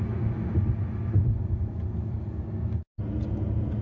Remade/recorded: recorded